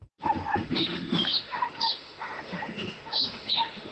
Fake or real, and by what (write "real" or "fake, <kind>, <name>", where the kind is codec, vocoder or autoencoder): fake, autoencoder, DAC-VAE